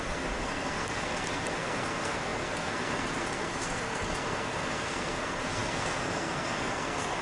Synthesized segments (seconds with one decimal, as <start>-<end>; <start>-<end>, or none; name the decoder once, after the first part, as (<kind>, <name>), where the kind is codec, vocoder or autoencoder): 0.0-7.2 (codec, SNAC)